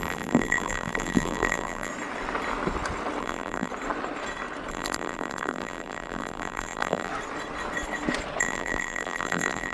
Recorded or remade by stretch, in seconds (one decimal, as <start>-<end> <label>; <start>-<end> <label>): 0.0-1.9 remade; 1.9-3.2 recorded; 3.2-3.7 remade; 3.7-4.7 recorded; 4.7-7.1 remade; 7.1-8.4 recorded; 8.4-9.7 remade

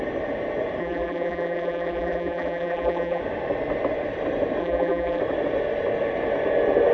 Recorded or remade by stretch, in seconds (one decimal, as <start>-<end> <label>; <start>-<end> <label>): 0.0-0.8 recorded; 0.8-3.2 remade; 3.2-4.6 recorded; 4.6-5.2 remade; 5.2-6.9 recorded

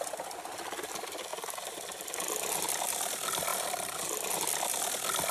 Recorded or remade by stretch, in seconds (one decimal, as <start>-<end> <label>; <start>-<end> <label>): 0.0-5.3 recorded

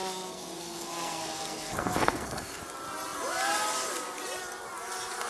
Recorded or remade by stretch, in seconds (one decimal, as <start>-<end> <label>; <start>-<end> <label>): 0.0-2.6 remade; 2.6-5.3 recorded

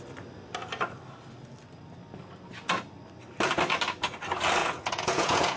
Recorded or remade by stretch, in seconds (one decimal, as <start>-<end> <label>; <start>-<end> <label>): 0.0-4.6 recorded; 4.6-5.6 remade

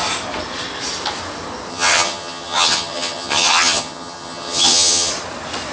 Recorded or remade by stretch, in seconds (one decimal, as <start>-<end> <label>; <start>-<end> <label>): 0.0-1.7 recorded; 1.7-5.1 remade; 5.1-5.7 recorded

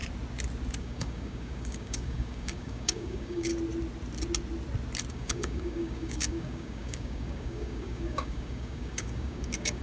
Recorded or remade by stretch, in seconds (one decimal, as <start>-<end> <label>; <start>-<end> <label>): 0.0-0.8 recorded; 0.8-3.5 remade; 3.5-5.1 recorded; 5.1-9.8 remade